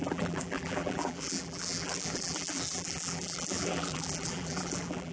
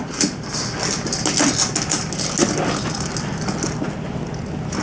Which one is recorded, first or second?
second